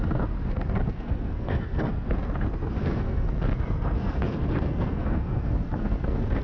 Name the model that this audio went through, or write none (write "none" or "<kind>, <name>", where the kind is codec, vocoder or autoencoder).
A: codec, SNAC